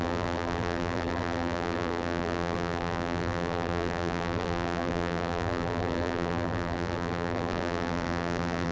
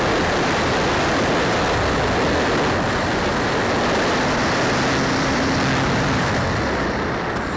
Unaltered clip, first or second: second